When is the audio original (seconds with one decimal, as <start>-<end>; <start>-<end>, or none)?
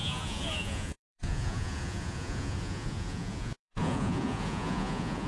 none